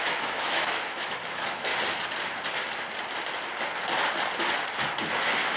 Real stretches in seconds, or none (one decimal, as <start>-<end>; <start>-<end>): 1.7-5.1